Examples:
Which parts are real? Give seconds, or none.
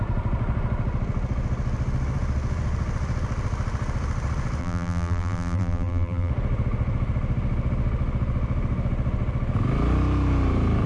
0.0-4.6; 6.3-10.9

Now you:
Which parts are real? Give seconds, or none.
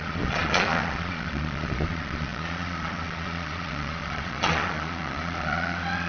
none